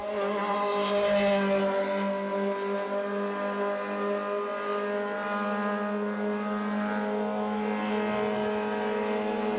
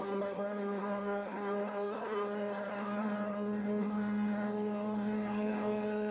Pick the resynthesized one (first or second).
second